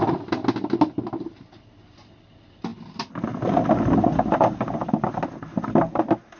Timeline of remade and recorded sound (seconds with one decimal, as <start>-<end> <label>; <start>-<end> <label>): 0.0-6.4 recorded